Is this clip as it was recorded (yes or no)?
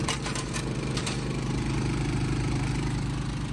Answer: no